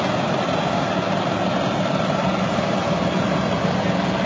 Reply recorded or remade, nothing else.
recorded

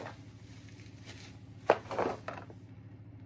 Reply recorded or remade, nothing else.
recorded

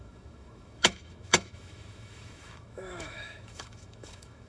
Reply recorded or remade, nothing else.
remade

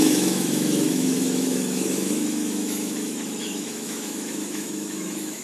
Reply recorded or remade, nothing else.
remade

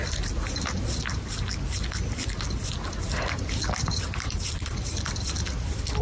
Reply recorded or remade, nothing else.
recorded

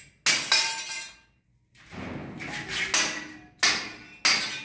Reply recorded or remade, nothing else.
recorded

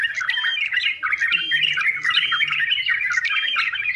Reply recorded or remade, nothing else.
remade